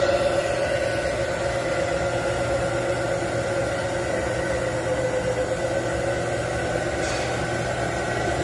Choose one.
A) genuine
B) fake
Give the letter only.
A